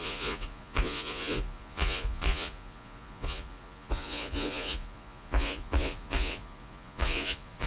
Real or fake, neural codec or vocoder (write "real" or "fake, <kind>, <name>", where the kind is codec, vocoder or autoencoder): fake, vocoder, Vocos